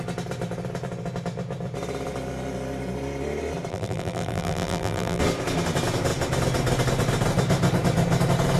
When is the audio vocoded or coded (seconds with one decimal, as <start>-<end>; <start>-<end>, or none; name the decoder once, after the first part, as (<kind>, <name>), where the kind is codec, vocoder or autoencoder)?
3.7-5.2 (vocoder, BigVGAN v2)